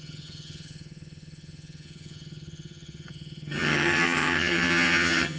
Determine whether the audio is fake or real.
fake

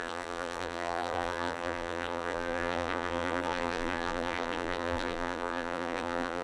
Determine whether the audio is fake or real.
fake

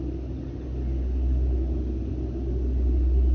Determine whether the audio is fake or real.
real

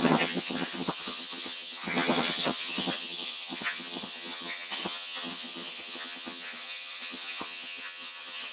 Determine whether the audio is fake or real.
fake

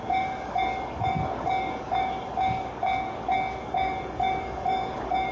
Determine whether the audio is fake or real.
fake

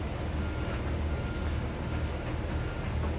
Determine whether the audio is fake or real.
real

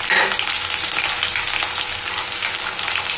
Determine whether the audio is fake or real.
real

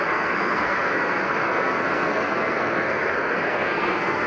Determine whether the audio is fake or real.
fake